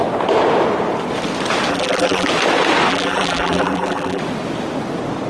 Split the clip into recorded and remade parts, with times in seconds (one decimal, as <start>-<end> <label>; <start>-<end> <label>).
0.0-1.7 recorded; 1.7-2.3 remade; 2.3-2.9 recorded; 2.9-4.2 remade; 4.2-5.3 recorded